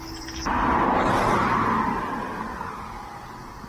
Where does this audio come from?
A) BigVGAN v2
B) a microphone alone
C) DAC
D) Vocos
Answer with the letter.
B